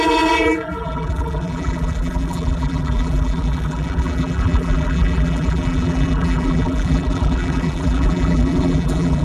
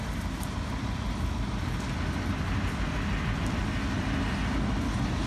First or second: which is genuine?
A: second